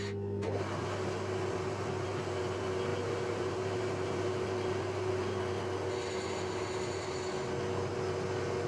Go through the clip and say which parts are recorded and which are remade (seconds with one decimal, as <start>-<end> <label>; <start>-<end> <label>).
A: 0.0-2.9 recorded; 2.9-5.1 remade; 5.1-8.7 recorded